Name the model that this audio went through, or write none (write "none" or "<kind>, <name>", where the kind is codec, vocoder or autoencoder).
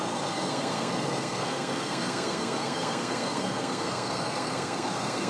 codec, SNAC